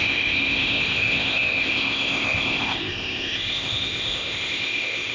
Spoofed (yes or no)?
yes